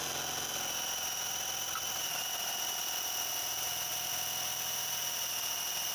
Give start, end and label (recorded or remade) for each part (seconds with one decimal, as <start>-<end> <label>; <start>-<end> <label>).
0.0-3.4 recorded; 3.4-4.1 remade; 4.1-5.9 recorded